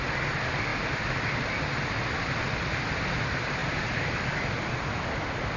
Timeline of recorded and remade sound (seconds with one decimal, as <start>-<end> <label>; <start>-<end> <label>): 0.0-5.6 recorded